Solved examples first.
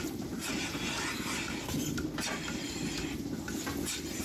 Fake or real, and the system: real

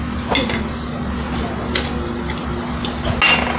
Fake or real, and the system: real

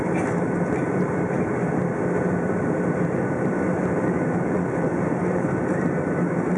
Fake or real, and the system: fake, vocoder, BigVGAN v2